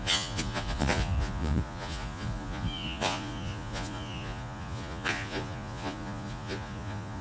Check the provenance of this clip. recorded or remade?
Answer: remade